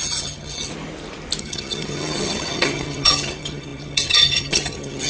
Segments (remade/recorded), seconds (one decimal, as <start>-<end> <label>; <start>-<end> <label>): 0.0-0.7 remade; 0.7-1.4 recorded; 1.4-5.1 remade